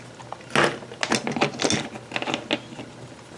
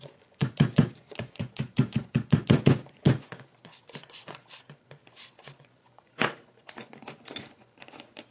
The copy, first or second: second